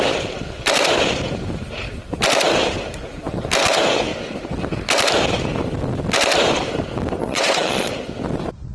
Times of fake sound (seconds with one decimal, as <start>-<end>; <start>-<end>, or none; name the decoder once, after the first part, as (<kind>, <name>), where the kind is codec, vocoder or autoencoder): 7.2-7.9 (vocoder, Vocos)